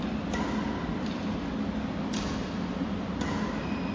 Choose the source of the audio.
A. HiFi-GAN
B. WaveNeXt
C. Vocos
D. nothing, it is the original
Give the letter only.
D